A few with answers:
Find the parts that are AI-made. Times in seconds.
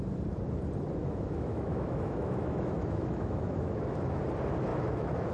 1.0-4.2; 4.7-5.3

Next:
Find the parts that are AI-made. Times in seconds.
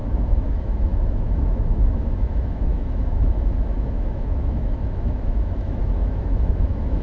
0.0-7.0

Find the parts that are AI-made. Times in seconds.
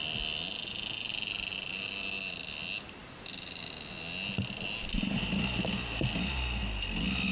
none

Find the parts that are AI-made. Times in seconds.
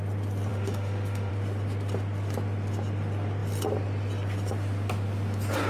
0.5-1.3